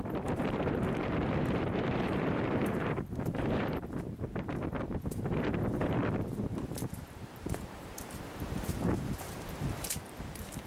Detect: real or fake fake